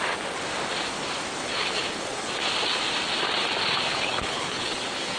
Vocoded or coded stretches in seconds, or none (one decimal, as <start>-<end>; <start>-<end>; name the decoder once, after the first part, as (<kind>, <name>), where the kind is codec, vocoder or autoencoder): 1.4-2.3 (codec, HILCodec); 3.9-5.2